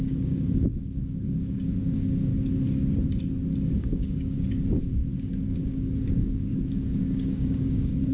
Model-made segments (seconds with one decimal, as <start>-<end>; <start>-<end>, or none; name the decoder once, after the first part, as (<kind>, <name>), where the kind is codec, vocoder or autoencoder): 0.0-2.3 (codec, DAC); 3.8-8.1